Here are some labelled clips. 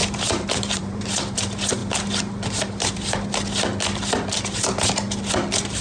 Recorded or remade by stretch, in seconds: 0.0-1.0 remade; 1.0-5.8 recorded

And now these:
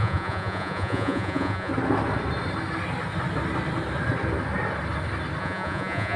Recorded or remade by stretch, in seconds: 0.0-1.7 remade; 1.7-5.4 recorded; 5.4-6.2 remade

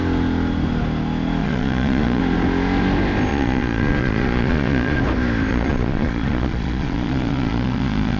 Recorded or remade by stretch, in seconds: 0.0-1.4 recorded; 1.4-2.2 remade; 2.2-3.3 recorded; 3.3-5.0 remade; 5.0-5.5 recorded; 5.5-8.2 remade

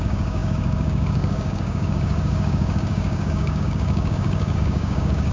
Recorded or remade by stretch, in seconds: 0.0-5.3 remade